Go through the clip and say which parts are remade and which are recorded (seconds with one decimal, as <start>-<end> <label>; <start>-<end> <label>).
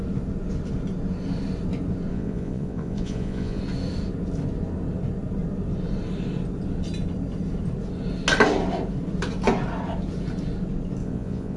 0.0-2.1 recorded; 2.1-3.6 remade; 3.6-11.0 recorded; 11.0-11.6 remade